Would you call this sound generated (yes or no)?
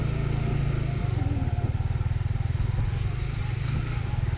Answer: no